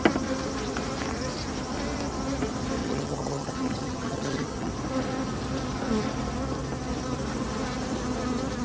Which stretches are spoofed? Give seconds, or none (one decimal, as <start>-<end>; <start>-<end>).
2.8-4.7